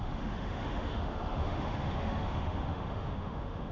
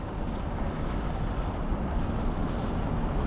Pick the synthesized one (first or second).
first